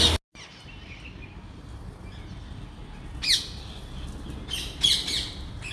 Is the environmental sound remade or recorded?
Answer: recorded